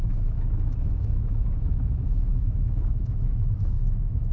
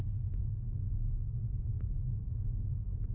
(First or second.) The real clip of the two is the second